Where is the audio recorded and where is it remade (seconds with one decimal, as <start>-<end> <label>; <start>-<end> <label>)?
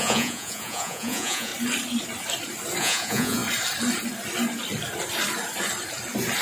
0.0-1.5 remade; 1.5-2.8 recorded; 2.8-3.4 remade; 3.4-6.4 recorded